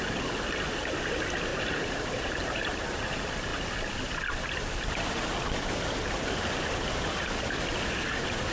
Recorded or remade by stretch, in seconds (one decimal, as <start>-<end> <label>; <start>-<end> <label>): 0.0-1.5 recorded; 1.5-3.1 remade; 3.1-8.5 recorded